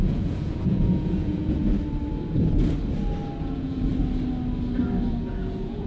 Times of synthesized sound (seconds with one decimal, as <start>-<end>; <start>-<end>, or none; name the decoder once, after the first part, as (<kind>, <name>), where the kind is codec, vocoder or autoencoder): 0.0-1.6 (vocoder, Vocos); 3.4-3.9; 5.1-5.9